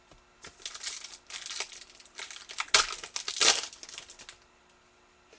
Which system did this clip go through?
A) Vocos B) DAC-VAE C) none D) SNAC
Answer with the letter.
C